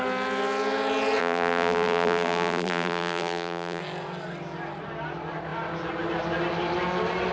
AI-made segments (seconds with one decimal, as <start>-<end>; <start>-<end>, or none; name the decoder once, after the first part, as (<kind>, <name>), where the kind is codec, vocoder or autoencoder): 1.2-3.8 (vocoder, BigVGAN v2)